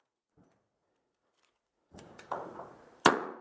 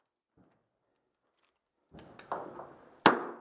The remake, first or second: first